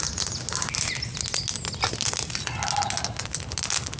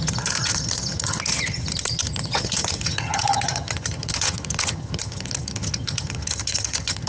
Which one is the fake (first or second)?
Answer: second